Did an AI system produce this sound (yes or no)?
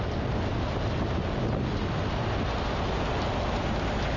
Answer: no